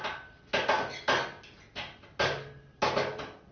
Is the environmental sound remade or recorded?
recorded